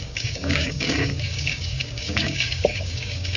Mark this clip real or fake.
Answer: fake